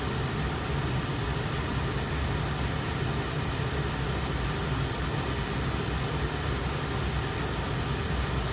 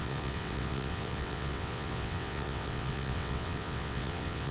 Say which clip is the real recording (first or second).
first